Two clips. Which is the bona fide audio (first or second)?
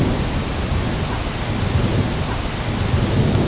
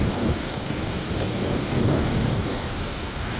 first